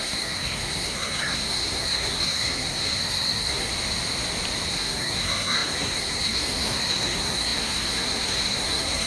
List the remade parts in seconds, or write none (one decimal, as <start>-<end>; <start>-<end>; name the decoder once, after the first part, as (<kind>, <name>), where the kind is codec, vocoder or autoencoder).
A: 0.0-3.7 (codec, SNAC); 4.7-9.1